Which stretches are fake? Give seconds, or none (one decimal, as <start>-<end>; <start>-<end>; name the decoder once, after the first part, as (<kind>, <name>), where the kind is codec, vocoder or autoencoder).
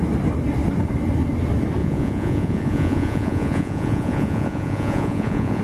1.8-5.6 (vocoder, Vocos)